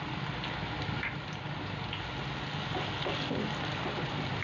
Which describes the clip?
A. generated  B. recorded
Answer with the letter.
B